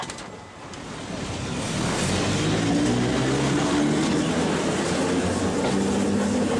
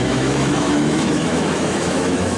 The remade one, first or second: second